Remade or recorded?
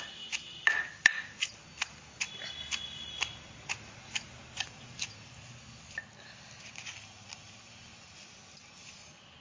recorded